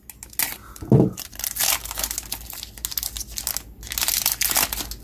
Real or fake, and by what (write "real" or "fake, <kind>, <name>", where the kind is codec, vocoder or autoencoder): real